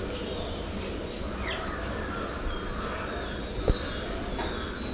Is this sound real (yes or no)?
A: yes